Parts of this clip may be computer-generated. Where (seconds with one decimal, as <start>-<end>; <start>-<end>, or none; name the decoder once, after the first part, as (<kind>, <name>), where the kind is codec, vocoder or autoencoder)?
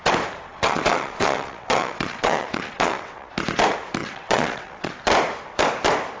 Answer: 0.5-3.3 (vocoder, WaveNeXt); 4.0-4.9